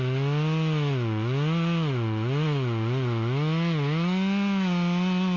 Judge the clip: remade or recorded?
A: recorded